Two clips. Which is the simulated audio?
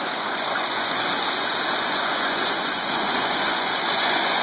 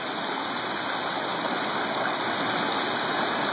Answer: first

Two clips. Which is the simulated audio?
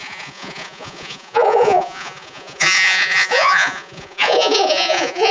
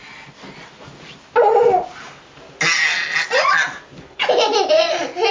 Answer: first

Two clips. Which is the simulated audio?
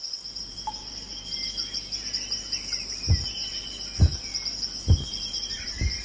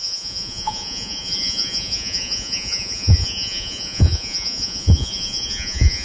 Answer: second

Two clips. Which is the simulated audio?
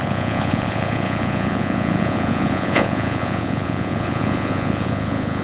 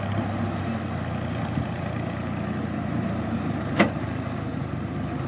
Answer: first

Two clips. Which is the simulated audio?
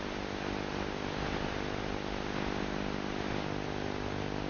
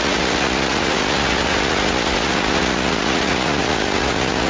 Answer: second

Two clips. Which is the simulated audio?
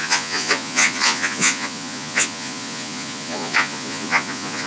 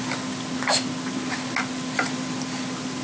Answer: first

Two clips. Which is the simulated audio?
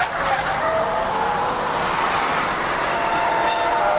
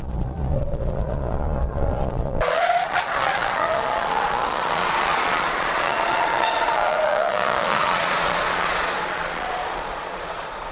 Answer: second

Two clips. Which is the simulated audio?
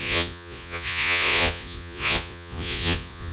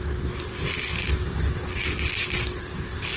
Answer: first